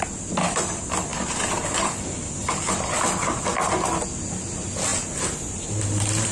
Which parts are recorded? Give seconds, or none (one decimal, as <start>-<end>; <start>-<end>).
0.0-6.3